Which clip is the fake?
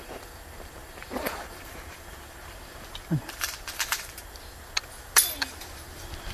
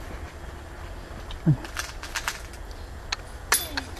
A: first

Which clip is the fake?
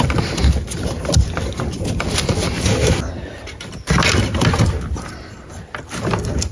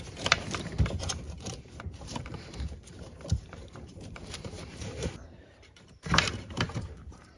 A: second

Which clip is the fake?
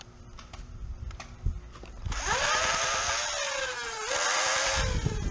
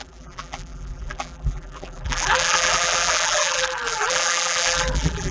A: second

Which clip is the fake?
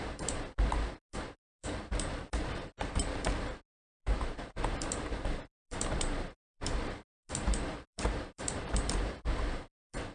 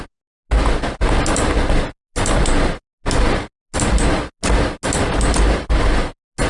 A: first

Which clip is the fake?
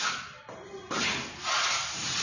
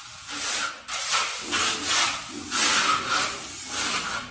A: first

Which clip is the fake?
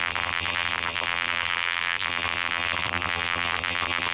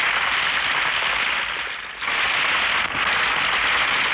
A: first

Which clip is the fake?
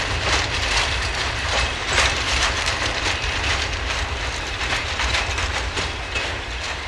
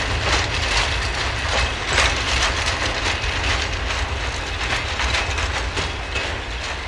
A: first